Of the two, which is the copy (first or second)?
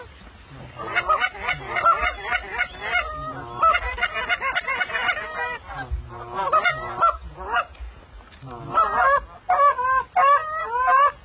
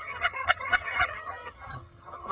second